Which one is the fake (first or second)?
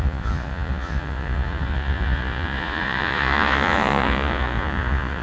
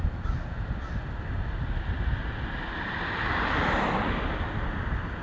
first